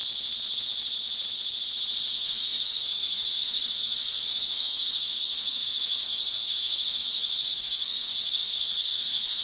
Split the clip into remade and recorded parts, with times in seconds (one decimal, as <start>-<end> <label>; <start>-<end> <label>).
0.0-2.1 recorded; 2.1-9.4 remade